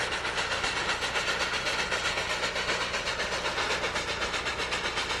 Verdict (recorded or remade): recorded